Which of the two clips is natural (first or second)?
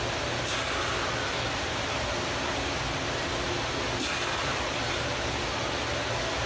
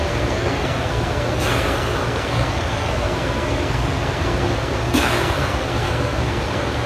first